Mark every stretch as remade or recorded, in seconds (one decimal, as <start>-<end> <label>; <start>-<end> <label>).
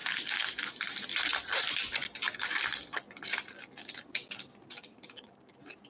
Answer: 0.0-5.9 recorded